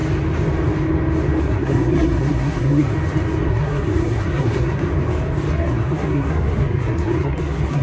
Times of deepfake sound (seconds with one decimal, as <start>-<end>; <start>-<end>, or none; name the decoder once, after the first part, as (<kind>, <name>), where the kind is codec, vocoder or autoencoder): 1.4-2.9 (codec, SNAC); 3.5-4.9; 5.5-7.8